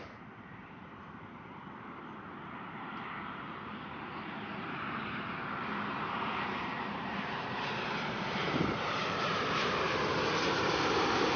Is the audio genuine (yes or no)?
no